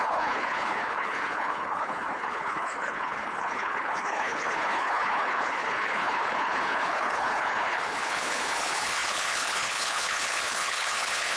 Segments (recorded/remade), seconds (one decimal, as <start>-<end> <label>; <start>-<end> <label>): 0.0-11.4 remade